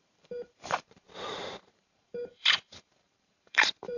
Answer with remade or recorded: remade